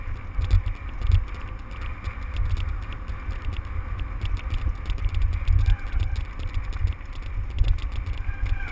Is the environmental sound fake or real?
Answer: real